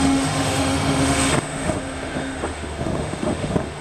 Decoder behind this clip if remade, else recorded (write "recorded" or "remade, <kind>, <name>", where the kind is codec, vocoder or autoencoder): remade, autoencoder, DAC-VAE